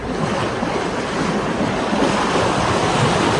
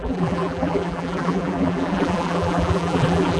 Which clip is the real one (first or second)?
first